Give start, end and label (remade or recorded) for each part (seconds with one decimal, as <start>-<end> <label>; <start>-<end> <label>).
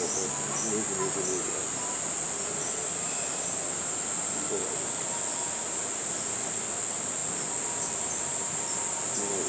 0.0-9.5 recorded